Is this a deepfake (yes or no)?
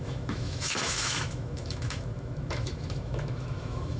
yes